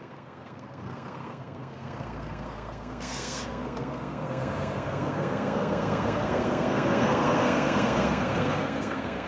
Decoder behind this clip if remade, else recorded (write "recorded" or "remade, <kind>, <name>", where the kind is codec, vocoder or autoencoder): remade, codec, SNAC